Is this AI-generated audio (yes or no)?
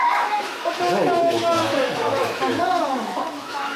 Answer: yes